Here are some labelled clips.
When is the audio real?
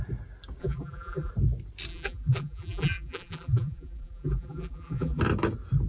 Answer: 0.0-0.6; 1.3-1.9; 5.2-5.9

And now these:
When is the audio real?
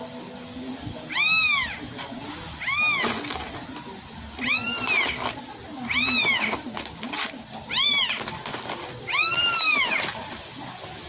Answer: 0.0-11.1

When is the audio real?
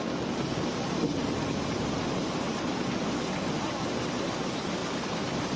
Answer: 0.0-2.2; 3.1-4.8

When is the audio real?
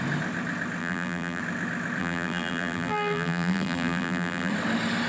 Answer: 0.0-0.8; 1.4-2.0; 4.5-5.1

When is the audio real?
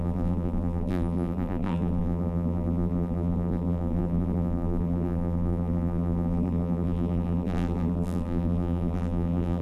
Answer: none